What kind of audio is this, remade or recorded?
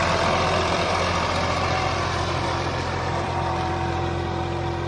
remade